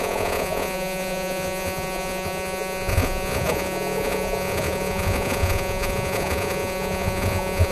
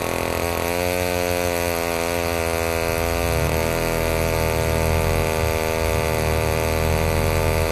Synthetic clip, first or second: first